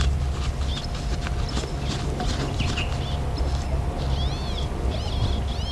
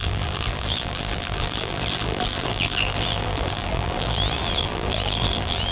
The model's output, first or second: second